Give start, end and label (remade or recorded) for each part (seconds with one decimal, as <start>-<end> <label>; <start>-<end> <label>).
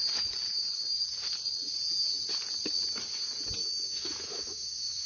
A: 0.0-3.6 recorded; 3.6-5.1 remade